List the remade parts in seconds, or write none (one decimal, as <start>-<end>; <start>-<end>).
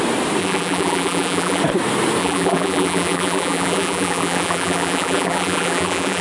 0.4-1.6; 2.2-6.2